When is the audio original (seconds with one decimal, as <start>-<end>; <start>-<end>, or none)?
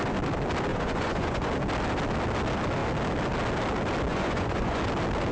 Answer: 0.0-0.7; 1.5-4.1; 4.8-5.3